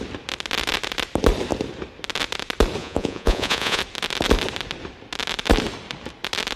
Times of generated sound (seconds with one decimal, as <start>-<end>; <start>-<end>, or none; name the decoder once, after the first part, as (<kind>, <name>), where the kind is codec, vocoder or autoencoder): 2.8-3.8 (vocoder, Vocos)